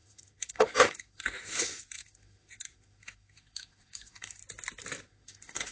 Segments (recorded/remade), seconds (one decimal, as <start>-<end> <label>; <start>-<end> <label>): 0.0-4.4 remade; 4.4-5.0 recorded; 5.0-5.7 remade